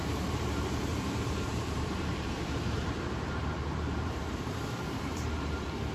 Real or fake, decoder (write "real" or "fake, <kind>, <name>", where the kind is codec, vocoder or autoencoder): fake, vocoder, BigVGAN v2